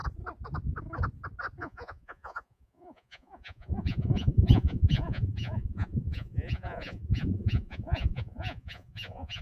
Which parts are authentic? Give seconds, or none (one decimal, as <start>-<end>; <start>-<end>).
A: 0.0-1.6